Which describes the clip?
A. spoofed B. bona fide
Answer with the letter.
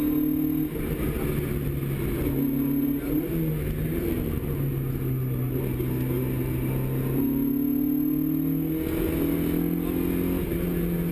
B